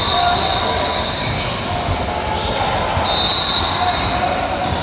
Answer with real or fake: real